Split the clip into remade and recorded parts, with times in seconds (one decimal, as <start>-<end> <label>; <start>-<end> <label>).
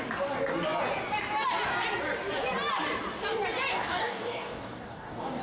0.0-3.7 recorded; 3.7-5.4 remade